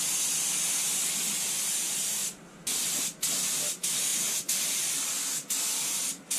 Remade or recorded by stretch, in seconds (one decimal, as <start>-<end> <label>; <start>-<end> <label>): 0.0-6.4 recorded